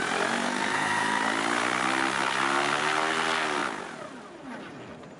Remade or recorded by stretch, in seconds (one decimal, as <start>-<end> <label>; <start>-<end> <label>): 0.0-0.4 recorded; 0.4-1.2 remade; 1.2-5.2 recorded